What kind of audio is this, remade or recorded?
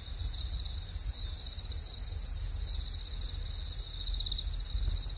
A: recorded